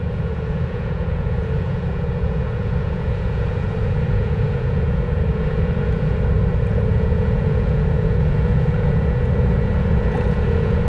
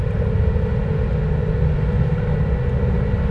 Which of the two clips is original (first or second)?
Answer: second